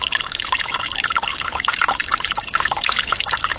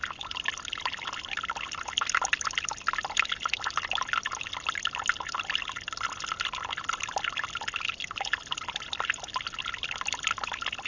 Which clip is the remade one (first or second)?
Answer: first